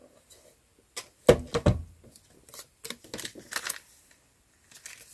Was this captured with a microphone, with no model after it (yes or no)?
yes